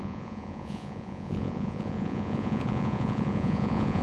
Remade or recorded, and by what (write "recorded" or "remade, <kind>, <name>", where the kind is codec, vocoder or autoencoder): remade, vocoder, Vocos